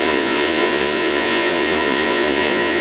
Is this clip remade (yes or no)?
yes